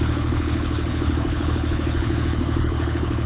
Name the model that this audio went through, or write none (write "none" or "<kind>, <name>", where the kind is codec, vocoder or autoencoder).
codec, HILCodec